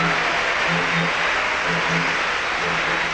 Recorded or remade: recorded